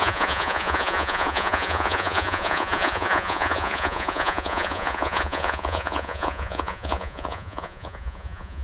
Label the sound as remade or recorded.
remade